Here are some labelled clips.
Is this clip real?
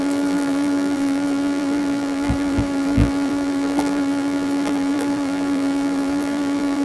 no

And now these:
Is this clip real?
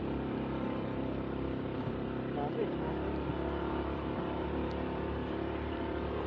no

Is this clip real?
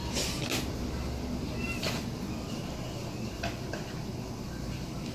yes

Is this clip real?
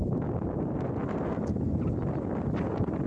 yes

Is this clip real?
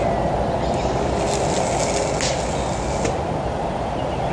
yes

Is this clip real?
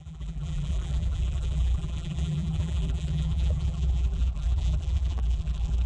no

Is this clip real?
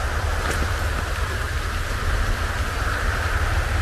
yes